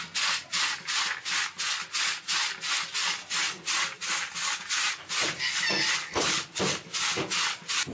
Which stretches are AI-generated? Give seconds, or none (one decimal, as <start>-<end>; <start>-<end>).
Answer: 6.1-6.6

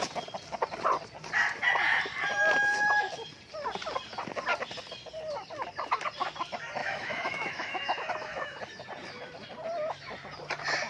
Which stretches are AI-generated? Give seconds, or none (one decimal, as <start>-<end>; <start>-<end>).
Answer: 6.8-8.6

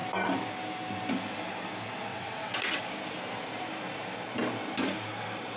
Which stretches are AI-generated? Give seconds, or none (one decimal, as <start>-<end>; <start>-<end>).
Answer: 2.1-2.8

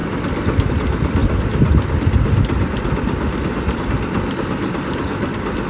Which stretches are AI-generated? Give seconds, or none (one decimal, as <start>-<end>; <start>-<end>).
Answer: none

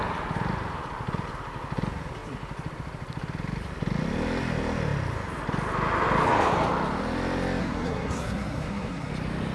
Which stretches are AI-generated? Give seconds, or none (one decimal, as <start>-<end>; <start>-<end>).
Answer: 7.6-9.1

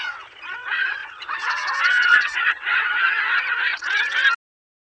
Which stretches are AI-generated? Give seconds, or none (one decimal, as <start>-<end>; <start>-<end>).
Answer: 0.0-4.2

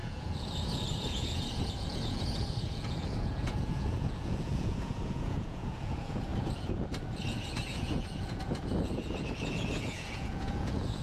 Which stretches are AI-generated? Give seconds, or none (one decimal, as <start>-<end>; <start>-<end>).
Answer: 0.0-11.0

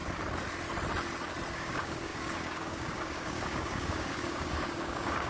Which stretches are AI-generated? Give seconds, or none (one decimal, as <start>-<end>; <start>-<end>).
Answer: 1.5-5.3